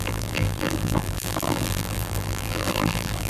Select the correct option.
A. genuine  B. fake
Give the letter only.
B